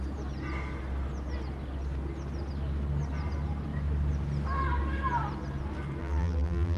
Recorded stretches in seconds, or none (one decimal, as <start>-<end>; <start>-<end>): 0.0-6.0